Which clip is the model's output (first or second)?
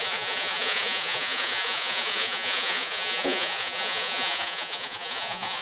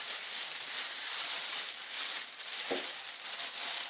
first